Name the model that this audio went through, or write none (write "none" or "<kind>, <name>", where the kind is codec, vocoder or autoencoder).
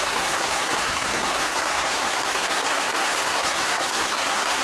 codec, SNAC